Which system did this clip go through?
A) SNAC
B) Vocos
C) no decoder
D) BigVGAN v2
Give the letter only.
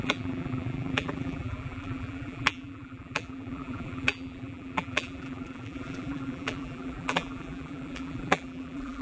D